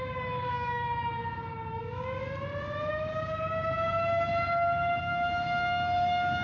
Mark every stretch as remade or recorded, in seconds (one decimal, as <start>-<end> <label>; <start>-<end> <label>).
0.0-1.2 remade; 1.2-1.7 recorded; 1.7-2.2 remade; 2.2-2.9 recorded; 2.9-4.3 remade; 4.3-5.0 recorded; 5.0-6.4 remade